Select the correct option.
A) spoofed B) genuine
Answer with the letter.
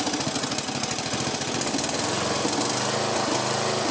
B